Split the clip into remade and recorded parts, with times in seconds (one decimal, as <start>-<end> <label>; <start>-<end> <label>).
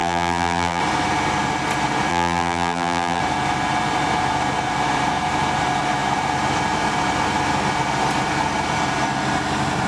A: 0.0-0.8 remade; 0.8-2.1 recorded; 2.1-3.2 remade; 3.2-9.9 recorded